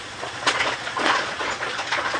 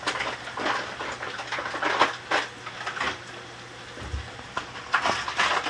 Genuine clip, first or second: second